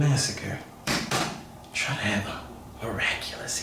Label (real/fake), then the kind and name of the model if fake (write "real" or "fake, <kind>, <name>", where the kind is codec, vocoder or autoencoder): fake, vocoder, BigVGAN v2